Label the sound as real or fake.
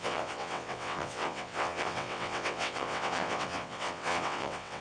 fake